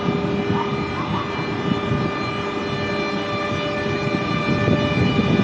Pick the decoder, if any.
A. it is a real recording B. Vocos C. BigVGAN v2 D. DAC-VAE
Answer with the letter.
A